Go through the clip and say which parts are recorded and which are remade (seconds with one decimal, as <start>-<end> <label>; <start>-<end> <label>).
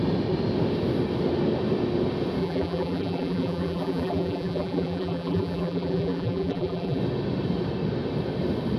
0.0-2.4 recorded; 2.4-7.0 remade; 7.0-8.8 recorded